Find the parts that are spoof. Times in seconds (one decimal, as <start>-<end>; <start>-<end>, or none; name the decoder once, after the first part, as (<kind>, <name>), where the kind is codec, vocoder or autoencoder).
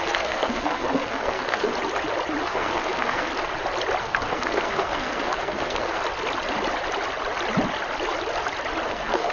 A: 0.0-1.7 (codec, SNAC); 2.4-3.3; 4.0-6.0; 8.9-9.3